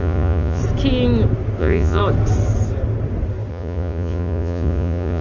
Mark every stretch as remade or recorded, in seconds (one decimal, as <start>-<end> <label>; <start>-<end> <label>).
0.0-0.6 remade; 0.6-1.6 recorded; 1.6-2.0 remade; 2.0-3.5 recorded; 3.5-5.2 remade